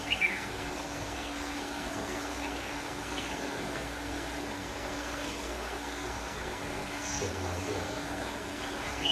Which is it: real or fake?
fake